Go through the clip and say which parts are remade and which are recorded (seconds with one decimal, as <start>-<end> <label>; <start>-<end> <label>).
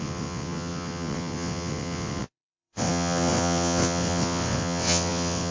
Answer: 0.0-5.5 remade